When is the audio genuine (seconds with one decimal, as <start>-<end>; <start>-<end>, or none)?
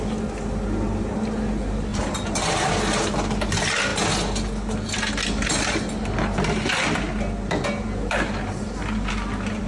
0.0-1.9; 2.7-9.7